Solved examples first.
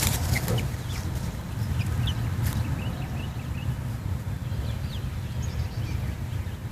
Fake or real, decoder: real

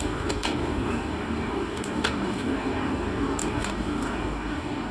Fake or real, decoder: fake, codec, DAC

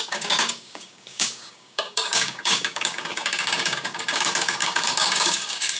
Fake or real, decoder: fake, codec, DAC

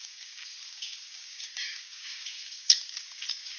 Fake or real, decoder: fake, codec, DAC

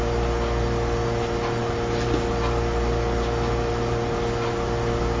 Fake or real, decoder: real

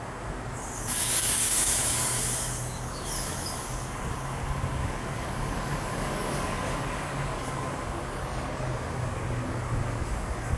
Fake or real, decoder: fake, codec, DAC